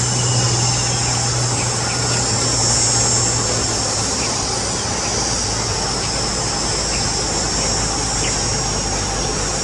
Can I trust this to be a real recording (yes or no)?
yes